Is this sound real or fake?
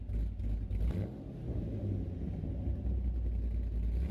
real